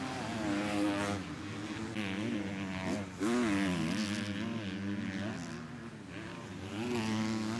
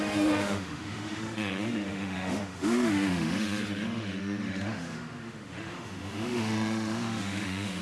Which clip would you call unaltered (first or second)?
first